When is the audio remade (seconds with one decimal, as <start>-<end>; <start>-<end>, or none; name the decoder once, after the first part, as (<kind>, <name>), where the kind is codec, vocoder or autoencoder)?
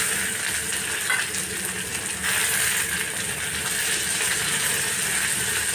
none